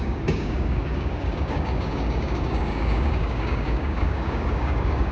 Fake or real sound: fake